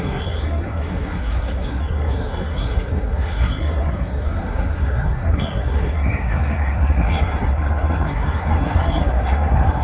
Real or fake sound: fake